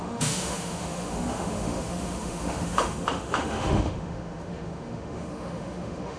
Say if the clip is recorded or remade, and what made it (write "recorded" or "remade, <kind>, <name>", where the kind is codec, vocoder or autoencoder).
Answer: remade, autoencoder, DAC-VAE